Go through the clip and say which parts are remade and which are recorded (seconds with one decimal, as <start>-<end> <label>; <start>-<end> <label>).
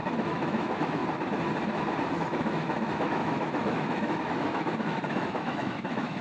0.0-1.0 remade; 1.0-2.1 recorded; 2.1-6.2 remade